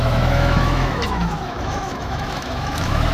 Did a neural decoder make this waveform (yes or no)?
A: yes